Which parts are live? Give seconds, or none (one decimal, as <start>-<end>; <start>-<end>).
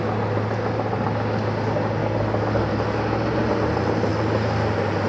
0.0-2.0; 2.7-5.1